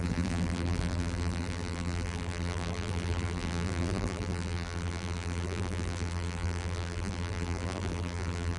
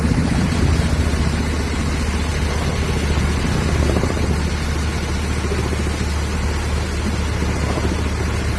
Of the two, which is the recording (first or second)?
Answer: second